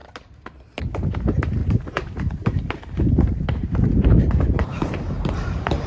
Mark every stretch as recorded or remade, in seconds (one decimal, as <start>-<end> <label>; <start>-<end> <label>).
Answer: 0.0-1.2 recorded; 1.2-5.9 remade